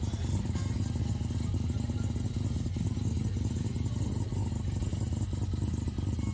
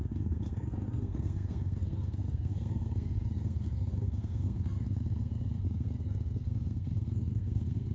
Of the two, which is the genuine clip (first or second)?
first